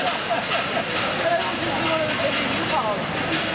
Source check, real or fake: real